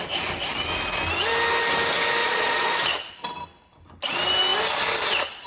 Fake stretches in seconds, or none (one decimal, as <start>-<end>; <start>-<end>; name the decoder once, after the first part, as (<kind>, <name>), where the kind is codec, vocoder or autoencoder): 2.2-3.1 (vocoder, Vocos)